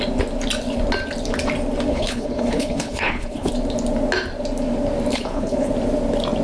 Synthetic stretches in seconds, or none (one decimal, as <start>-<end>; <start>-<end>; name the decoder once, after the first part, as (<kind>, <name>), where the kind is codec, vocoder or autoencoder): 1.9-3.5 (codec, HILCodec); 5.1-5.7